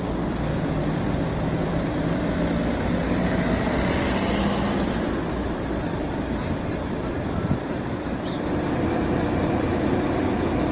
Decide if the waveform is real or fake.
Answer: real